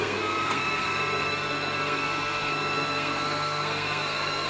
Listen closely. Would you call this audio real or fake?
fake